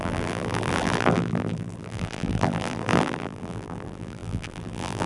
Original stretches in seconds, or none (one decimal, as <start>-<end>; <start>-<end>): none